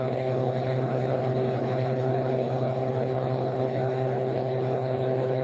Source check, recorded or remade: remade